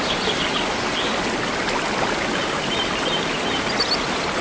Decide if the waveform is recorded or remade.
recorded